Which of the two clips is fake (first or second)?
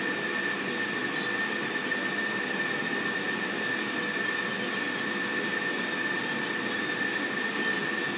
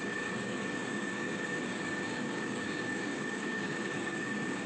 second